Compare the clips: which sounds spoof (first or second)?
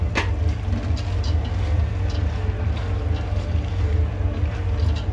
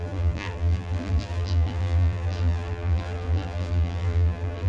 second